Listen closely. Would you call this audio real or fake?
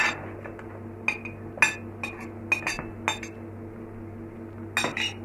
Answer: real